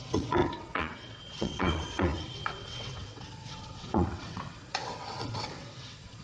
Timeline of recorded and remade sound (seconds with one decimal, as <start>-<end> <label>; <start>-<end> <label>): 0.0-6.2 remade